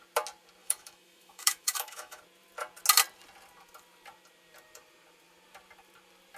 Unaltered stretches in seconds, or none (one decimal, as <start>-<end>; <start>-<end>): 0.0-0.6; 2.2-6.4